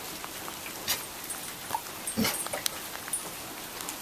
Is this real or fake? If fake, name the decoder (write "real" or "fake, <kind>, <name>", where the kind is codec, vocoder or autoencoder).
real